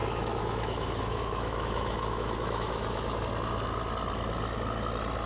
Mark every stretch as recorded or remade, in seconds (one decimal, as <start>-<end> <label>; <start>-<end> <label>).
0.0-3.2 remade; 3.2-5.3 recorded